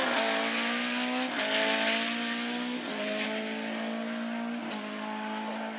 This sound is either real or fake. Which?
real